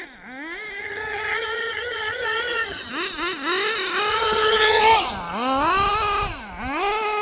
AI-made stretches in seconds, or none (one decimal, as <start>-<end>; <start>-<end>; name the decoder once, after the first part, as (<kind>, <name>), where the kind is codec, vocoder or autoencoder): 0.8-2.9 (vocoder, HiFi-GAN); 4.1-4.8